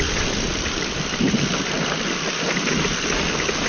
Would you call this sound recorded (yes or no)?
yes